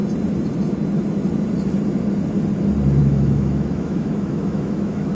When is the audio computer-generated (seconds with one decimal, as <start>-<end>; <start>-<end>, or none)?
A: 3.0-5.1